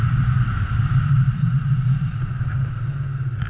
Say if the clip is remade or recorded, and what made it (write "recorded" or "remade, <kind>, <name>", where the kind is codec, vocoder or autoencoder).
recorded